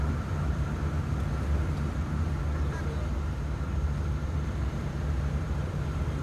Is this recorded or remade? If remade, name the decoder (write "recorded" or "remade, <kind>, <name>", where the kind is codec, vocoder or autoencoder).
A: remade, vocoder, BigVGAN v2